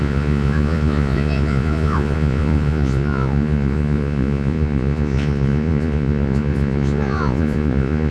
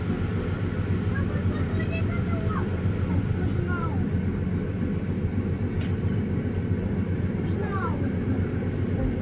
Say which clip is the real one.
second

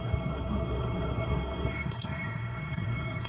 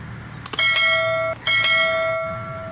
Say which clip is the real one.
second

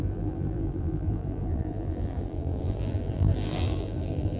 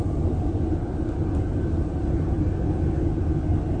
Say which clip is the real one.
second